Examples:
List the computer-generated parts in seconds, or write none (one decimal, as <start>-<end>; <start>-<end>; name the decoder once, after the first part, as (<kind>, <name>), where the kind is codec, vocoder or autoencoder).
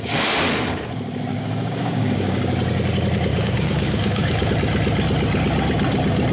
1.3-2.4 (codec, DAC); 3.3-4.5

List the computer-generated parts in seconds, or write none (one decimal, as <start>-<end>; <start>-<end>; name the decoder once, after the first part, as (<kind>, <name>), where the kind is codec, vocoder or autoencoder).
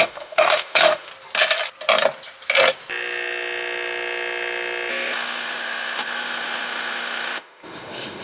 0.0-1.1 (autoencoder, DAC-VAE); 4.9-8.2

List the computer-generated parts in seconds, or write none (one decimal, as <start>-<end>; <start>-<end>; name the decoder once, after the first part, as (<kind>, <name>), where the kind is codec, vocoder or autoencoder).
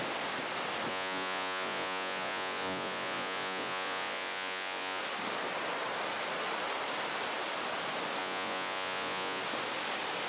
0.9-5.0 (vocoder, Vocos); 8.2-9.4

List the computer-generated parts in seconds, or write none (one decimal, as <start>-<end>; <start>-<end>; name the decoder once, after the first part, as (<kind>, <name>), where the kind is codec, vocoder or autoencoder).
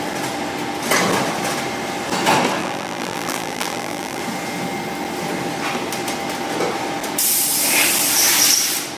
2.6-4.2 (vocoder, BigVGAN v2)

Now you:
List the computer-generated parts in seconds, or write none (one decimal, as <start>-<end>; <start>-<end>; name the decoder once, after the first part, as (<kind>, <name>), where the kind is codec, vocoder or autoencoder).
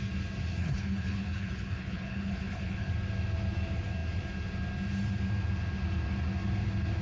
0.6-2.9 (codec, HILCodec)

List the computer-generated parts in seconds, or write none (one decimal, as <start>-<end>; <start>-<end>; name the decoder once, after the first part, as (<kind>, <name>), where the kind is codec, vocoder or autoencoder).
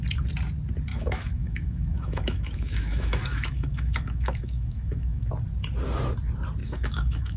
0.9-5.3 (autoencoder, DAC-VAE); 6.6-7.4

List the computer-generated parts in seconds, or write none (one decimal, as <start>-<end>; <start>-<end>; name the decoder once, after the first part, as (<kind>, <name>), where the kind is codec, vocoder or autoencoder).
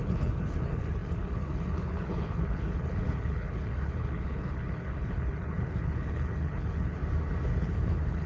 0.0-7.0 (codec, HILCodec); 7.6-8.3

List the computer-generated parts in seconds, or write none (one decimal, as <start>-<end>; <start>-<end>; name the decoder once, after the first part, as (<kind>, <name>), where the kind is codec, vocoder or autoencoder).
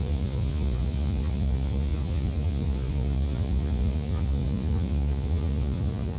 0.0-6.2 (vocoder, Vocos)